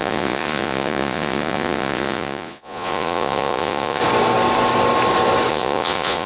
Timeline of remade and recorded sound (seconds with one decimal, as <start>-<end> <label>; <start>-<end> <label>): 0.0-4.0 remade; 4.0-5.5 recorded; 5.5-6.3 remade